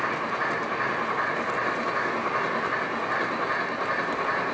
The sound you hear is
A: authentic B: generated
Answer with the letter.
A